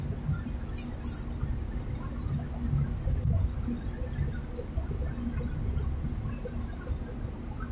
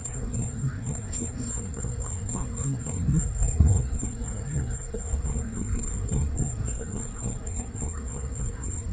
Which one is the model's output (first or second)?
second